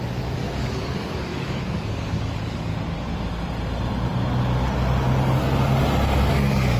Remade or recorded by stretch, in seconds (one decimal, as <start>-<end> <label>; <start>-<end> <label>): 0.0-2.7 remade; 2.7-6.3 recorded; 6.3-6.8 remade